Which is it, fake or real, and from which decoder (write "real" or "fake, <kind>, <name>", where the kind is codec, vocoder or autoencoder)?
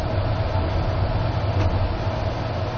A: real